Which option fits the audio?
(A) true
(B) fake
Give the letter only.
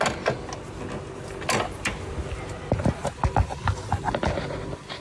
A